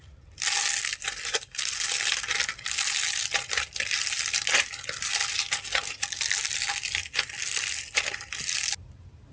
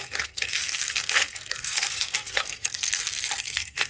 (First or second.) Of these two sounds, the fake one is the second